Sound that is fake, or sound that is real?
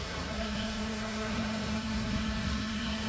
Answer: fake